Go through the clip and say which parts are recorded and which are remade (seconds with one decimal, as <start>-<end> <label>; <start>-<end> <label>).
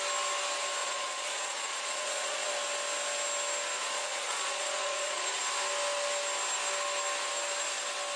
0.0-0.8 recorded; 0.8-2.5 remade; 2.5-3.8 recorded; 3.8-5.4 remade; 5.4-8.2 recorded